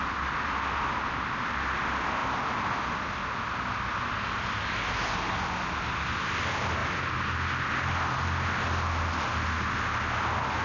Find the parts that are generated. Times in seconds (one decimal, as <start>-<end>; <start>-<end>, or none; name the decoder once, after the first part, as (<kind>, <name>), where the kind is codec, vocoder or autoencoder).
none